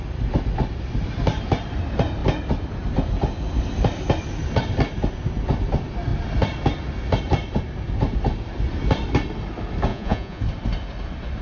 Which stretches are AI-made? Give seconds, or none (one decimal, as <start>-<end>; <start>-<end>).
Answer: 9.9-10.4